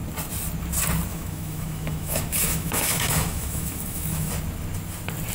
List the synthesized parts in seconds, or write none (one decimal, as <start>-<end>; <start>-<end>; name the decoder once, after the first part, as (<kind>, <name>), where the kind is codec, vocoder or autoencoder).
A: 1.1-4.3 (autoencoder, DAC-VAE)